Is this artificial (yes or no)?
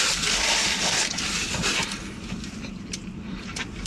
yes